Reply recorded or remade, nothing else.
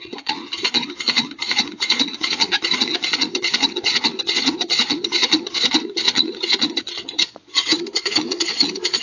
remade